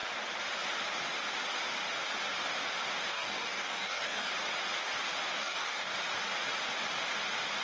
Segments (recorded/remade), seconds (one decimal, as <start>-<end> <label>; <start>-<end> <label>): 0.0-3.1 recorded; 3.1-4.3 remade; 4.3-5.4 recorded; 5.4-5.9 remade; 5.9-7.6 recorded